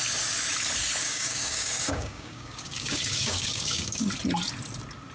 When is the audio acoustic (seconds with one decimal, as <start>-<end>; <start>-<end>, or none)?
0.0-1.0; 4.1-5.1